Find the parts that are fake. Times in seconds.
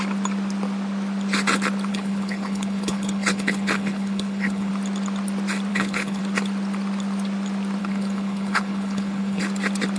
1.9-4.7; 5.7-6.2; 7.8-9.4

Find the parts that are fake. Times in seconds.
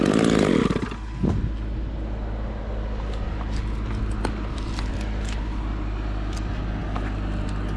none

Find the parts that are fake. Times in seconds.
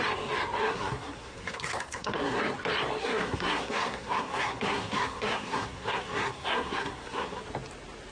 0.6-2.4; 3.0-7.4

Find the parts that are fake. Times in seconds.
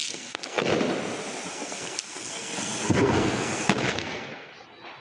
0.0-0.7; 1.5-4.5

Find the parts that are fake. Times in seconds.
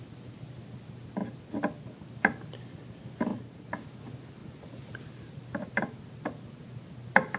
3.3-4.0; 4.4-4.9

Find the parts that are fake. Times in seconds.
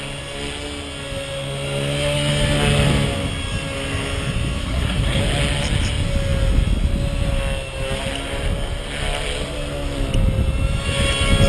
4.6-5.2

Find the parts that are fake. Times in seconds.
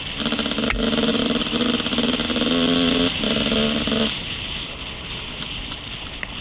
1.1-4.9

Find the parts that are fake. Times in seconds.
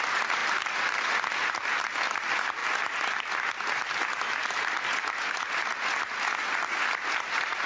none